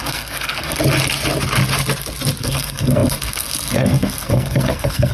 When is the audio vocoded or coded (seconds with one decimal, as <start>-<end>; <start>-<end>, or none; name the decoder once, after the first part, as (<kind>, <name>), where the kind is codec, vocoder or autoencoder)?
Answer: 0.0-0.8 (codec, SNAC); 2.4-5.1